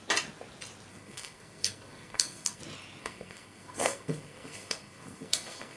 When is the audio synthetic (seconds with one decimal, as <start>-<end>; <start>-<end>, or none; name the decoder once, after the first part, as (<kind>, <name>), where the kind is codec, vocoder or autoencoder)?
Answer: 0.9-2.6 (codec, SNAC); 3.0-5.8